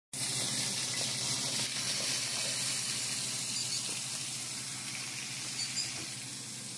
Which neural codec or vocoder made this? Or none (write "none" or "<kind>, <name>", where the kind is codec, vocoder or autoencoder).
none